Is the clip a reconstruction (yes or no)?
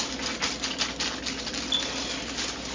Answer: no